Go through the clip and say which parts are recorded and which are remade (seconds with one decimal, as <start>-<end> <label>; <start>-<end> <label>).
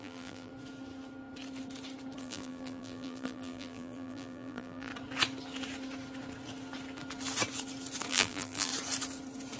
0.0-0.5 remade; 0.5-2.2 recorded; 2.2-4.9 remade; 4.9-8.1 recorded; 8.1-8.7 remade; 8.7-9.6 recorded